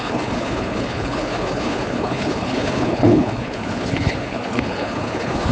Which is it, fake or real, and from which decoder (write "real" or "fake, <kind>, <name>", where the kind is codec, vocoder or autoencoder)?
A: fake, codec, HILCodec